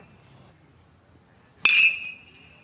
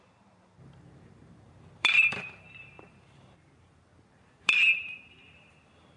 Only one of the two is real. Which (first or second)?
first